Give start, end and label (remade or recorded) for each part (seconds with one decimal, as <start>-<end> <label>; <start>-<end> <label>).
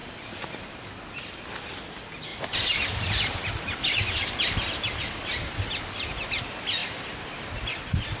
0.0-8.2 recorded